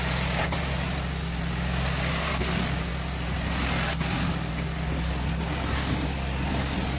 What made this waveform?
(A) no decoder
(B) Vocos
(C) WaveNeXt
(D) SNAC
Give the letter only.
A